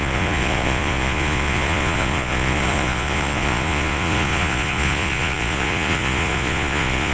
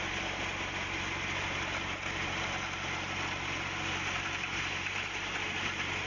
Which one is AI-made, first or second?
first